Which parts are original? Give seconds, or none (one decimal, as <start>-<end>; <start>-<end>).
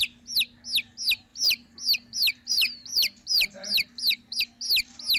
0.0-1.3; 4.4-5.2